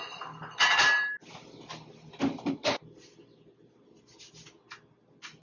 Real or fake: real